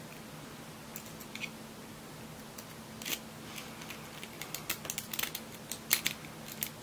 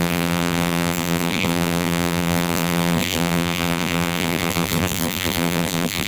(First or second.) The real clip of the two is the first